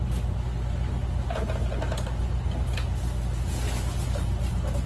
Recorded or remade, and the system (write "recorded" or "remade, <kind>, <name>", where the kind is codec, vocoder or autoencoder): recorded